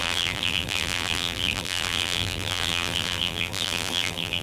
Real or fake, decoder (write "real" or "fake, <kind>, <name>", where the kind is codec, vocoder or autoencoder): fake, vocoder, BigVGAN v2